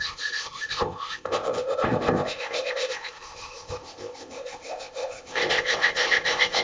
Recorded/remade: remade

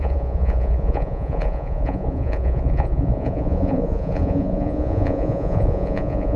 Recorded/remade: remade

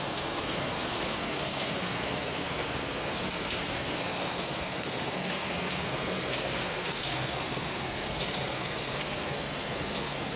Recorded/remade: remade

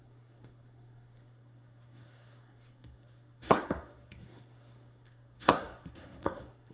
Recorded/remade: remade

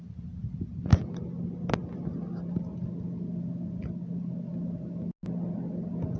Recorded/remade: recorded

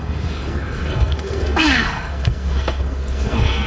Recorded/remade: remade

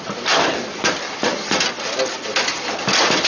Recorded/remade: recorded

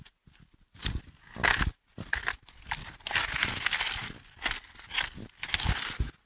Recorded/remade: recorded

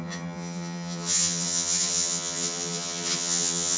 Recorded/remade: remade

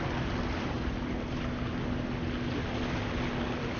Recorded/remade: recorded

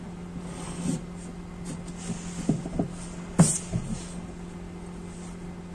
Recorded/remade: recorded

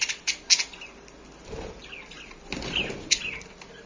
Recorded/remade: recorded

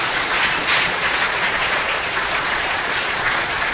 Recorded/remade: remade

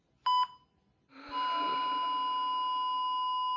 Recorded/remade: recorded